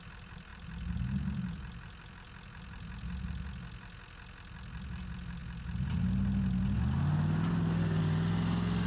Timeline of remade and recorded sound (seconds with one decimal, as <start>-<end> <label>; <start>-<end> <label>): 0.0-8.9 recorded